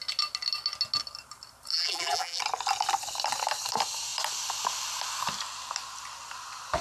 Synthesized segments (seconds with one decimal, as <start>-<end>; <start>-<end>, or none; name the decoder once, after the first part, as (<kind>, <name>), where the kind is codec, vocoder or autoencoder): 1.7-2.4 (vocoder, BigVGAN v2)